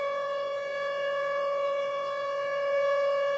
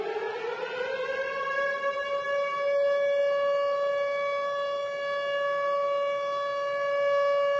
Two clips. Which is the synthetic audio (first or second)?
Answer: first